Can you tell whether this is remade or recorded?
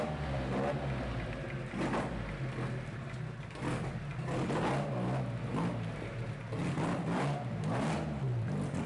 recorded